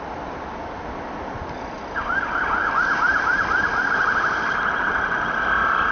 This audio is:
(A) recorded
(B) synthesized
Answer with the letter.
A